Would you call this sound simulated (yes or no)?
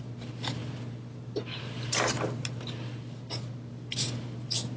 no